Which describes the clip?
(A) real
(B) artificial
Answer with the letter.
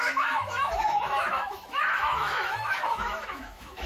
B